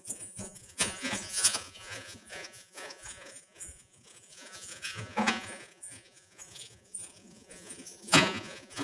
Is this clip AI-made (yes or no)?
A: yes